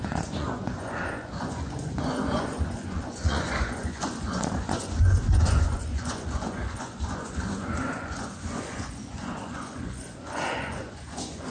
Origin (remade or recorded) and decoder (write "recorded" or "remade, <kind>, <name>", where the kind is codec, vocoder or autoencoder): remade, vocoder, Vocos